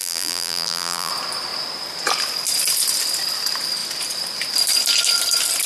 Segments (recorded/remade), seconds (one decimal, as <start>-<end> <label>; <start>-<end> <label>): 0.0-1.1 remade; 1.1-5.7 recorded